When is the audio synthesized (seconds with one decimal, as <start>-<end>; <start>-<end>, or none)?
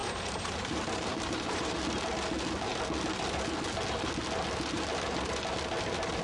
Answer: 0.0-1.7